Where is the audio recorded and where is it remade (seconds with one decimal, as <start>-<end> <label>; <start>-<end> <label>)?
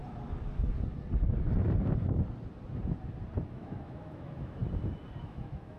0.0-3.5 recorded; 3.5-4.6 remade; 4.6-5.2 recorded; 5.2-5.8 remade